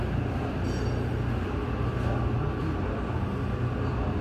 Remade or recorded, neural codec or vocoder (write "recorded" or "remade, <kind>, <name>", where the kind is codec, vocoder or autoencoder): recorded